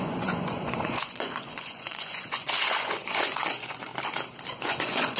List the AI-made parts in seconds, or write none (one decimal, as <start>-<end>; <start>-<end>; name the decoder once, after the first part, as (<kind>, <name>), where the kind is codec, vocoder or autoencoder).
0.0-3.9 (vocoder, Vocos); 4.5-5.2

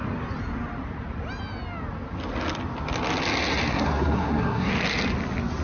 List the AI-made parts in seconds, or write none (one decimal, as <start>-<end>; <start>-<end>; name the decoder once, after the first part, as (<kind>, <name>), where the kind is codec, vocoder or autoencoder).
3.7-4.7 (codec, SNAC)

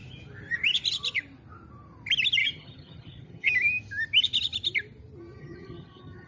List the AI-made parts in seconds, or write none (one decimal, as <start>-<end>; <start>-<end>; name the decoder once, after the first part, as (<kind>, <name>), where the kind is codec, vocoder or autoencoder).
2.4-3.5 (vocoder, HiFi-GAN); 5.4-6.3